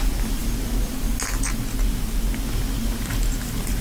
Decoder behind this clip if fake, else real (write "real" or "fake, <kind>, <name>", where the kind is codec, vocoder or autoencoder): real